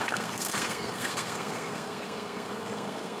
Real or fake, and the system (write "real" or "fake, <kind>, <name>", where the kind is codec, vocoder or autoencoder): fake, codec, SNAC